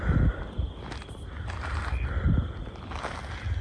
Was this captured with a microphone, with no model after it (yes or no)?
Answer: yes